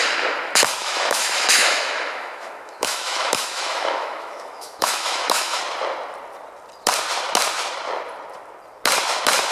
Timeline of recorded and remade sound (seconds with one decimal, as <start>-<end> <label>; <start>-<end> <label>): 0.0-0.8 recorded; 0.8-5.6 remade; 5.6-9.5 recorded